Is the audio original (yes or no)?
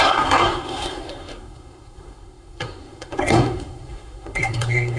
no